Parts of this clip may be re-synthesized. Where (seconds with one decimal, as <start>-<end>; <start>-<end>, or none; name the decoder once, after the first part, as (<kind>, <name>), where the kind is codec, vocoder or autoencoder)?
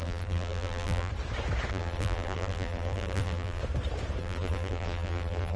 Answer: 0.0-1.1 (vocoder, BigVGAN v2); 1.7-3.6; 4.2-5.6